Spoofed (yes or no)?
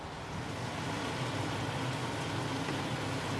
no